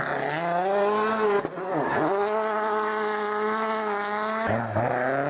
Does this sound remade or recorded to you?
recorded